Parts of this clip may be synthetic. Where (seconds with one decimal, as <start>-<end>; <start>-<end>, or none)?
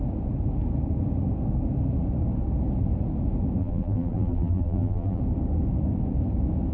3.6-5.2